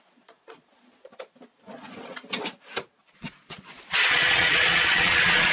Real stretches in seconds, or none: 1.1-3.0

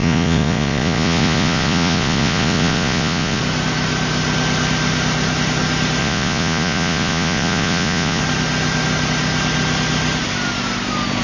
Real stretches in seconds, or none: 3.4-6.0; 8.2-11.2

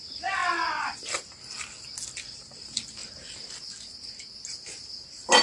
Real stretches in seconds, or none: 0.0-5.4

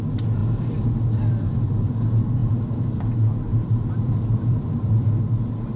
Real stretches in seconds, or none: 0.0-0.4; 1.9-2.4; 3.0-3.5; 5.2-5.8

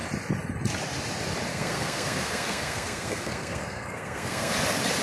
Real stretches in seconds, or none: 0.0-1.5; 4.5-5.0

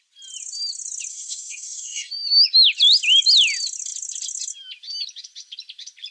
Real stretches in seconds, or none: 0.0-1.1; 2.1-6.1

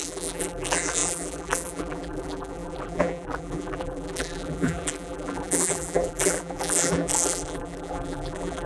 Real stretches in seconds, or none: none

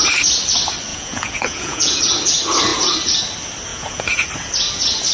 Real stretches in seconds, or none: 0.0-0.9; 2.0-3.7; 4.3-5.1